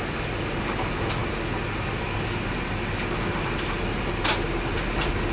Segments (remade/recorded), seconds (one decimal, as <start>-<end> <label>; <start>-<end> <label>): 0.0-5.3 recorded